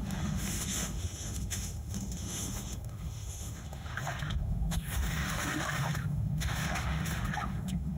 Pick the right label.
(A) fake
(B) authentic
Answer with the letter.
A